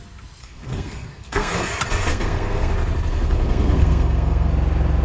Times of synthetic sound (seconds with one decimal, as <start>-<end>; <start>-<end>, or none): 0.4-1.6; 2.1-2.7; 3.1-4.5